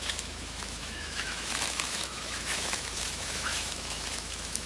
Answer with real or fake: fake